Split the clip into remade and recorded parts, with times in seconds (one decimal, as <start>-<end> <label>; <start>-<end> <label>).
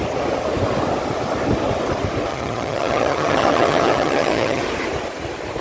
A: 0.0-2.3 recorded; 2.3-4.6 remade; 4.6-5.6 recorded